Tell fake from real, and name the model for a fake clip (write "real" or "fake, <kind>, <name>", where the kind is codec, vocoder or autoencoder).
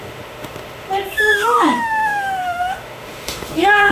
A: fake, autoencoder, DAC-VAE